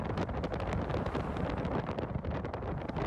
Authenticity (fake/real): real